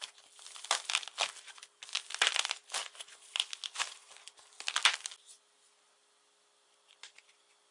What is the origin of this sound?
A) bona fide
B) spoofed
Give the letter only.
A